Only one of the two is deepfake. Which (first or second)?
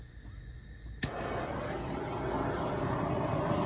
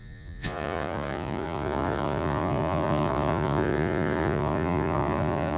second